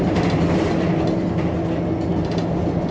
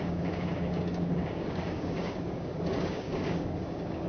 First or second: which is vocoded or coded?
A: second